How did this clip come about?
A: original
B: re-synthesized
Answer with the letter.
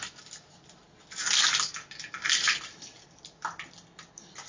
A